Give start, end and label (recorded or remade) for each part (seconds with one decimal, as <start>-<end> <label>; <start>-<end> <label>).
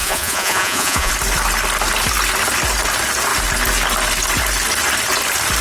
0.0-1.1 remade; 1.1-5.6 recorded